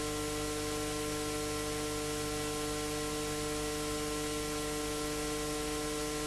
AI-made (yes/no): no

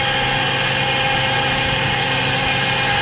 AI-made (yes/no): no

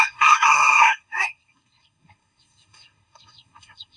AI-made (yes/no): yes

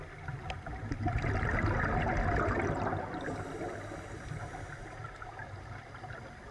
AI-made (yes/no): no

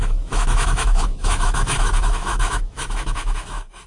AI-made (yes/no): yes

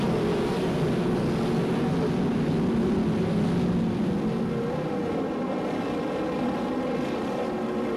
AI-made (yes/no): no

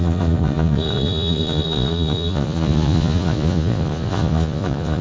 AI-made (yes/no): yes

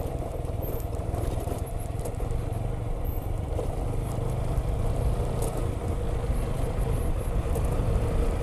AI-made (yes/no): no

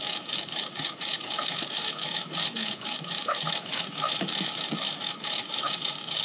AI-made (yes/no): yes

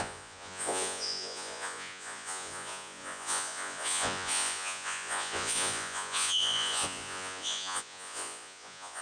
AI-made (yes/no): yes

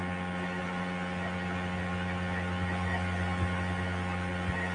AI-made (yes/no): no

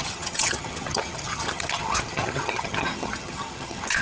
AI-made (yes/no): yes